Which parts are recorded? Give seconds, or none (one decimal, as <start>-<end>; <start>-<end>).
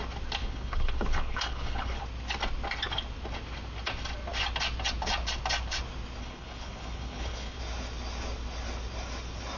0.0-0.4; 2.0-6.2; 7.6-9.6